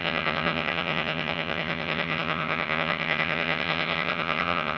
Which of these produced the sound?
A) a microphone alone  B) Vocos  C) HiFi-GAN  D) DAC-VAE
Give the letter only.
C